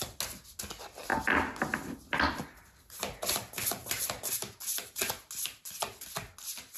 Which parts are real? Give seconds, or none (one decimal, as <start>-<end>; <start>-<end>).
0.0-6.8